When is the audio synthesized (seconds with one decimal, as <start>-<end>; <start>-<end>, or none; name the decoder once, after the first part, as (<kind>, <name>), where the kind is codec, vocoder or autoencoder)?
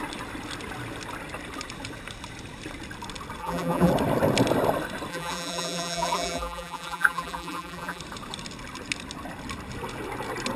3.4-3.9 (vocoder, BigVGAN v2); 5.1-8.0